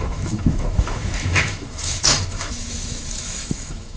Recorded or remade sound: remade